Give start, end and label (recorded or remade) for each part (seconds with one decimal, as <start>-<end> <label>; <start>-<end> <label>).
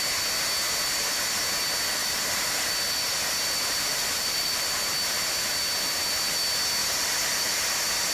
0.0-2.0 recorded; 2.0-2.7 remade; 2.7-3.9 recorded; 3.9-4.6 remade; 4.6-6.8 recorded; 6.8-7.6 remade; 7.6-8.1 recorded